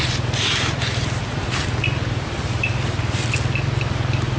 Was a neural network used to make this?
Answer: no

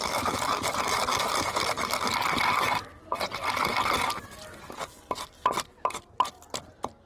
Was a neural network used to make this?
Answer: no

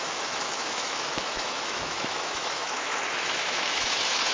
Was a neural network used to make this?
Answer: yes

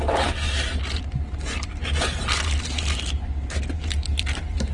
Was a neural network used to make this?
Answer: no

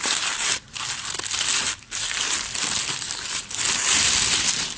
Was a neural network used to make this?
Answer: no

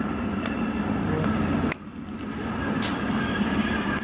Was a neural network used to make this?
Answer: no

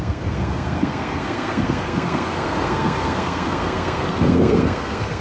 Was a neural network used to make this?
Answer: yes